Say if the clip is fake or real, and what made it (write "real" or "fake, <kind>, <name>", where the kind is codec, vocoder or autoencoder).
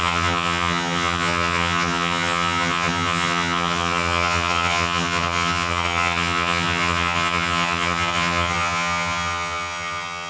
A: fake, vocoder, HiFi-GAN